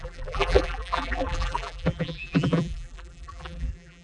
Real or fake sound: fake